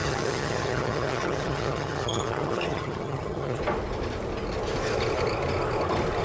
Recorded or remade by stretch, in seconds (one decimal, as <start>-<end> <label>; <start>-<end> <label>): 0.0-3.6 remade; 3.6-6.2 recorded